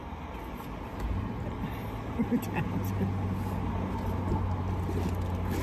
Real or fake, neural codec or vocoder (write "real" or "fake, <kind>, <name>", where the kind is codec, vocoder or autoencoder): real